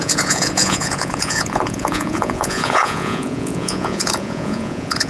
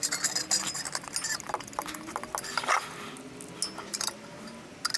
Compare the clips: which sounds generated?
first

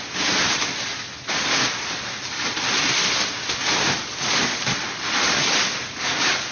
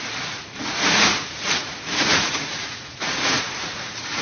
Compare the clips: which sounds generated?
second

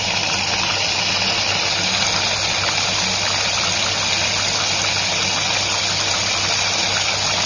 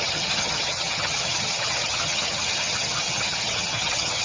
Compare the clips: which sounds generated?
second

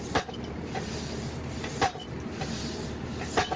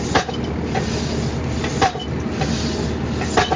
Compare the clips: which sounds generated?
first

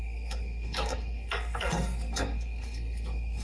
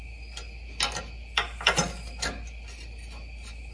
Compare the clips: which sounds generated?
first